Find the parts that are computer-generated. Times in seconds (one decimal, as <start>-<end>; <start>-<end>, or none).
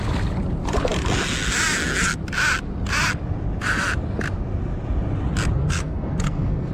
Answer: 5.6-6.7